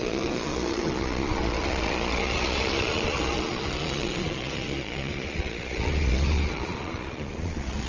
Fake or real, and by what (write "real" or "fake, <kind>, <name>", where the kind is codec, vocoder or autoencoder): fake, vocoder, Vocos